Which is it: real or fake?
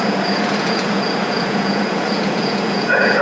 fake